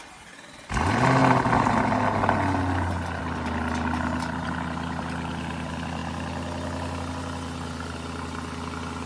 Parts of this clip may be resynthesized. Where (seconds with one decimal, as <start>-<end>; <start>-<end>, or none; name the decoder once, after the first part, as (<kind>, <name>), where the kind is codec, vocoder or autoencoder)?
none

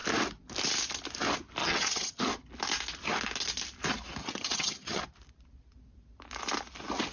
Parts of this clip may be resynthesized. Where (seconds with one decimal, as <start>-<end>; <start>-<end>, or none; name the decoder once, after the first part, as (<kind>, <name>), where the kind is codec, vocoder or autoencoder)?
1.6-2.2 (vocoder, HiFi-GAN); 4.2-5.0

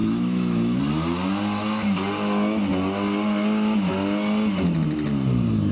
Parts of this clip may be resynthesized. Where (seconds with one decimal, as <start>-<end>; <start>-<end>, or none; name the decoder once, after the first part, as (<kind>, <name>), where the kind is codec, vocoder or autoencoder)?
0.0-0.8 (autoencoder, DAC-VAE)

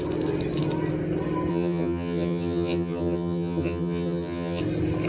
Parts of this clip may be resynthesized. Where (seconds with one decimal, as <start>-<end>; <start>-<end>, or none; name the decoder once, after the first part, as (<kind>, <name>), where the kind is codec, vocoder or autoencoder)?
1.5-4.6 (vocoder, HiFi-GAN)

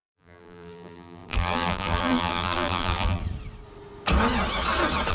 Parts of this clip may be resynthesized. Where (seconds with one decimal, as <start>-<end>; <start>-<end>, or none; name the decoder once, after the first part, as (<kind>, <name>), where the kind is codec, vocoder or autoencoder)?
0.0-3.2 (vocoder, BigVGAN v2)

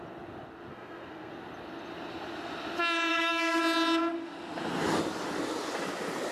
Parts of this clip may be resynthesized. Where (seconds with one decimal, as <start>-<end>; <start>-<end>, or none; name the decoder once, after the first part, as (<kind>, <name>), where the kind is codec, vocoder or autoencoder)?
0.7-1.3 (codec, SNAC); 3.1-3.6

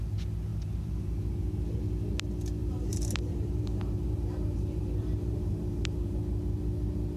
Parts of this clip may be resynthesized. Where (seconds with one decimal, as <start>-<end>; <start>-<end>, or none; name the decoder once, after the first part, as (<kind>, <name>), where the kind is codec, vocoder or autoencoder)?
0.5-1.8 (vocoder, BigVGAN v2); 2.6-6.2

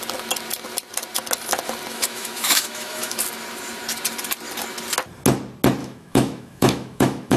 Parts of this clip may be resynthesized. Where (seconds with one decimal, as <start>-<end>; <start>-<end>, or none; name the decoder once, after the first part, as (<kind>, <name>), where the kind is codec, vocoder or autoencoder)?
1.9-3.2 (autoencoder, DAC-VAE); 5.8-7.4